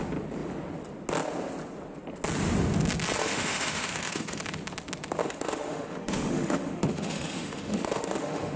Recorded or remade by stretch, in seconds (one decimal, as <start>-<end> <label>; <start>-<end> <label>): 0.0-3.2 recorded; 3.2-4.4 remade; 4.4-5.2 recorded; 5.2-8.6 remade